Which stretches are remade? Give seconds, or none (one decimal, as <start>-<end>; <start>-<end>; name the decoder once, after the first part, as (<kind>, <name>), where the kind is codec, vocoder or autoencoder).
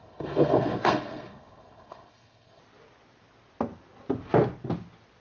0.0-2.6 (codec, SNAC)